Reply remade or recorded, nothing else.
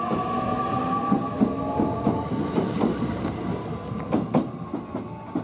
recorded